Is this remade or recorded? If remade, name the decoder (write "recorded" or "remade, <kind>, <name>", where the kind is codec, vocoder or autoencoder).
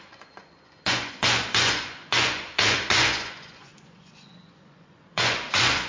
remade, vocoder, Vocos